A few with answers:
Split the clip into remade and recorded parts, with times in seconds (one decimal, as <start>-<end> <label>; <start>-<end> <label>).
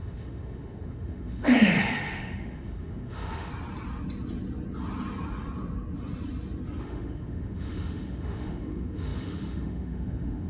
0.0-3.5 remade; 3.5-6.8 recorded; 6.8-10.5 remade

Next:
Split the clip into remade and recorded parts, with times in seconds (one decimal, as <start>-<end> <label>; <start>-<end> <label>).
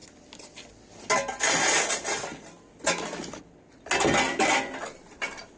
0.0-5.6 recorded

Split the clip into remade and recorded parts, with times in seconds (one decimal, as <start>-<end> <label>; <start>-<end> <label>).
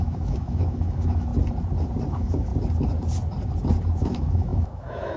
0.0-1.3 remade; 1.3-2.1 recorded; 2.1-2.5 remade; 2.5-4.0 recorded; 4.0-5.2 remade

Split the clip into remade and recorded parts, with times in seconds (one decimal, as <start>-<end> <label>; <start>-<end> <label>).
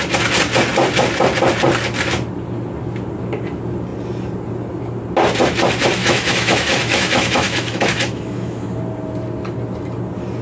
0.0-6.0 recorded; 6.0-8.7 remade; 8.7-10.4 recorded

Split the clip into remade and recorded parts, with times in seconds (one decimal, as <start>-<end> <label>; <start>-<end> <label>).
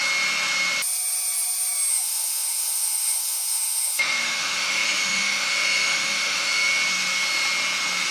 0.0-1.9 recorded; 1.9-6.7 remade; 6.7-8.1 recorded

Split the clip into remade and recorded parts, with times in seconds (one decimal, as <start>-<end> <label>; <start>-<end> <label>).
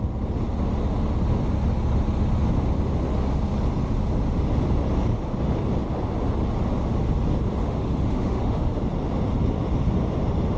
0.0-7.6 recorded; 7.6-8.8 remade; 8.8-10.6 recorded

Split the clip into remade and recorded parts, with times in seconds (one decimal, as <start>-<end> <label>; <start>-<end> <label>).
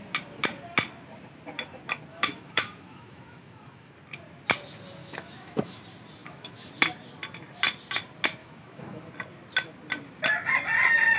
0.0-2.1 recorded; 2.1-3.9 remade; 3.9-5.0 recorded; 5.0-5.8 remade; 5.8-6.2 recorded; 6.2-6.7 remade; 6.7-8.4 recorded; 8.4-9.1 remade; 9.1-11.2 recorded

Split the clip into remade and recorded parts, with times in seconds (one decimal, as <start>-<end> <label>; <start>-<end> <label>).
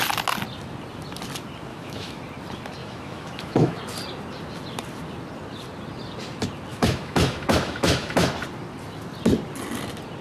0.0-1.7 recorded; 1.7-2.2 remade; 2.2-2.8 recorded; 2.8-3.8 remade; 3.8-6.7 recorded; 6.7-8.3 remade; 8.3-10.2 recorded